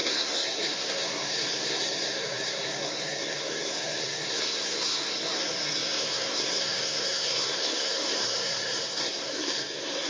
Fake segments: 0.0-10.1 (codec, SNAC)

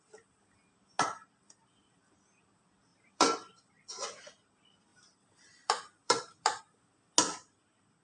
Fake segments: 2.9-3.7 (vocoder, BigVGAN v2); 4.9-6.6

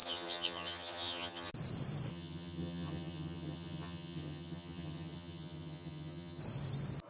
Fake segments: 0.0-1.5 (vocoder, HiFi-GAN); 2.1-6.4

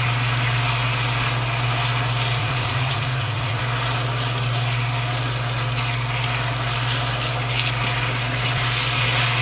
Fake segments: 2.4-3.6 (vocoder, Vocos)

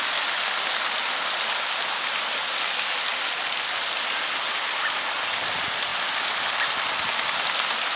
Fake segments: none

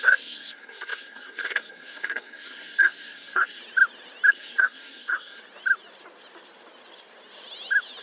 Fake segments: 0.0-3.6 (codec, SNAC); 4.3-5.4

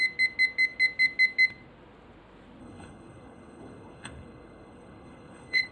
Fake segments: 2.6-5.7 (codec, HILCodec)

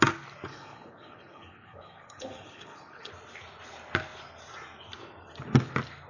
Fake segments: 0.5-3.1 (codec, HILCodec)